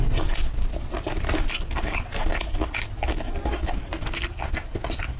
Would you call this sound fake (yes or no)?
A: no